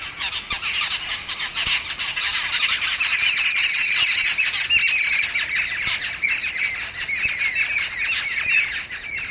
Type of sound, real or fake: real